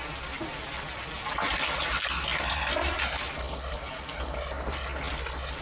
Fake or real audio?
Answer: real